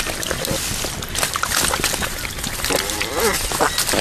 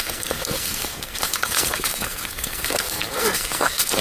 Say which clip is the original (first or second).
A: first